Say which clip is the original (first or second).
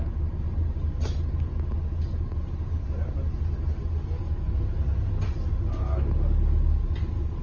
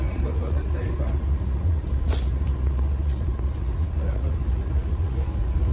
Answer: first